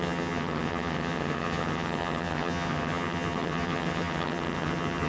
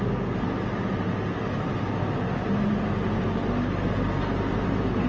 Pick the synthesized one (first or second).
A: first